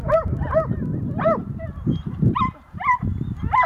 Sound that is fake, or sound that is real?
fake